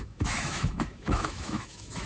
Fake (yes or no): yes